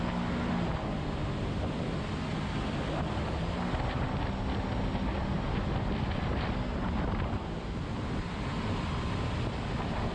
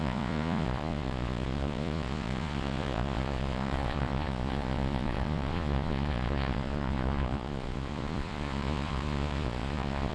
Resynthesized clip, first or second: second